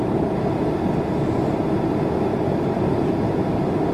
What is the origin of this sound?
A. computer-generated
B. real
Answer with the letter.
B